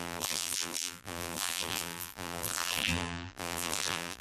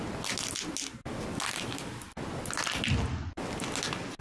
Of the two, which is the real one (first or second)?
second